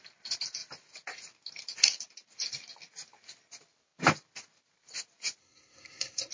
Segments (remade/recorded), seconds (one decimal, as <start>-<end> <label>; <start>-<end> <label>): 0.0-5.4 recorded; 5.4-6.3 remade